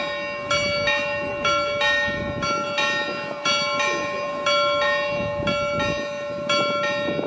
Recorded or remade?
recorded